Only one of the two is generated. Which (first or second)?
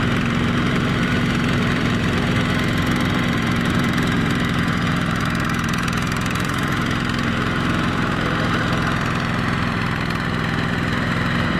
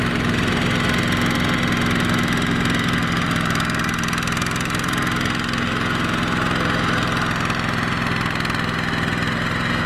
first